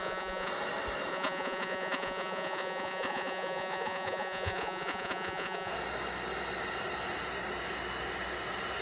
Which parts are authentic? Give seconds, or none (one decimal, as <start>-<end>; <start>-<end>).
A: 0.5-1.1; 5.7-8.8